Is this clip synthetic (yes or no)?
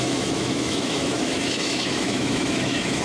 yes